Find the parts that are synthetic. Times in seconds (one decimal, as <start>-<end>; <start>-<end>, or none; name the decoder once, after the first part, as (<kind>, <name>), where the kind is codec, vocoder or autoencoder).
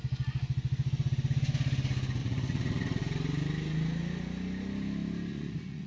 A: 2.2-3.0 (vocoder, Vocos); 5.3-5.9